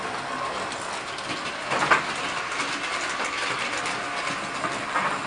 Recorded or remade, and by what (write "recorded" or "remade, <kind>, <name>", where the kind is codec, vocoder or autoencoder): recorded